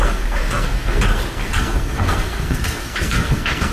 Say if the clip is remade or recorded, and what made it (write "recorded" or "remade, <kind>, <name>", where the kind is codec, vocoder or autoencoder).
remade, codec, SNAC